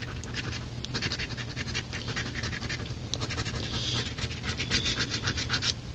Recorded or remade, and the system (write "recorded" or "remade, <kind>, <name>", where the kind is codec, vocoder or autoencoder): recorded